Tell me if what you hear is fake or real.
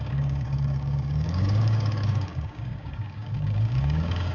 fake